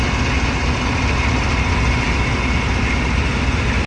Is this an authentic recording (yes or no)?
yes